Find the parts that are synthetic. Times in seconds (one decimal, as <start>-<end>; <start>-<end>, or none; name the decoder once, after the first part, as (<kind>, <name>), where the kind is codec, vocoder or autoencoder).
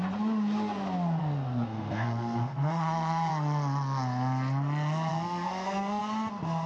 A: 1.2-3.3 (codec, SNAC); 5.1-6.0